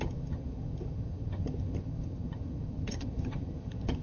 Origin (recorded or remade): remade